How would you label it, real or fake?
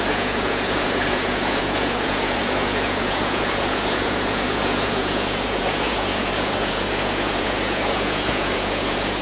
fake